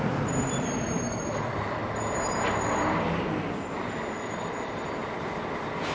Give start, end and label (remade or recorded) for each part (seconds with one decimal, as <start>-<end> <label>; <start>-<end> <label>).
0.0-1.8 remade; 1.8-3.5 recorded; 3.5-5.9 remade